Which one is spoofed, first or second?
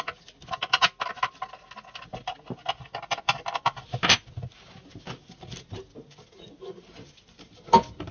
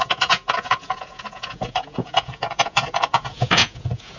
second